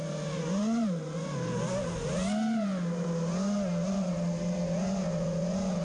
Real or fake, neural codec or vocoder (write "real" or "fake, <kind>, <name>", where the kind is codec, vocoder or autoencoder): real